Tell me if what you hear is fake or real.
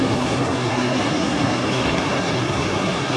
fake